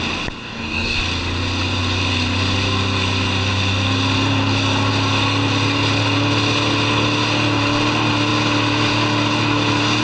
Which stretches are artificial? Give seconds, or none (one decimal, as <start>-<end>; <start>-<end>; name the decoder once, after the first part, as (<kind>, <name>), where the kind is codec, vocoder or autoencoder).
0.4-1.0 (codec, DAC)